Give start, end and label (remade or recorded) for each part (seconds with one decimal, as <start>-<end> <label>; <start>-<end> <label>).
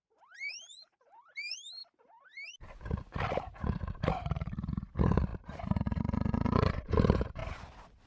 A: 0.0-1.8 remade; 1.8-4.1 recorded; 4.1-7.4 remade; 7.4-8.1 recorded